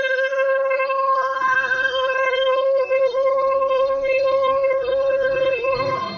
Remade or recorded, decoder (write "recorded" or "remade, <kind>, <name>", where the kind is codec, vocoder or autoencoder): remade, codec, SNAC